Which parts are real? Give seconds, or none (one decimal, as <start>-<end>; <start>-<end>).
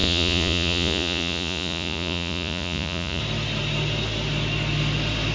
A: 3.2-5.3